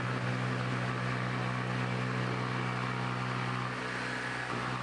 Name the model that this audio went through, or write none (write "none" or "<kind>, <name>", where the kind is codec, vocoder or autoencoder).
none